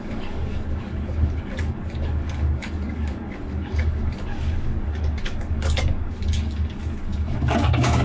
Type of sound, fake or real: fake